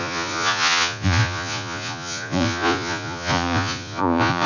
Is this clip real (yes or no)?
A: no